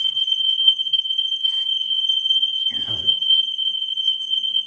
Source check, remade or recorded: remade